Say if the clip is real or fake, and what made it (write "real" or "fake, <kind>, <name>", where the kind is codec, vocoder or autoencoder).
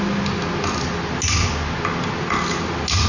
real